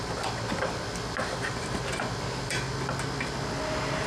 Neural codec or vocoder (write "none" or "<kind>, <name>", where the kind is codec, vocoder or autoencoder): none